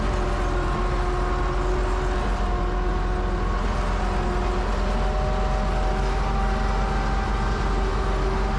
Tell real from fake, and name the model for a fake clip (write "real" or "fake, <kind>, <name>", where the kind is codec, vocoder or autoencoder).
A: real